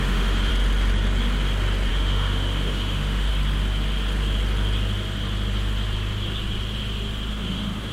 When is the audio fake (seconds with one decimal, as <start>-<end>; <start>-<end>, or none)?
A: 0.0-0.5; 1.9-3.3; 7.3-7.9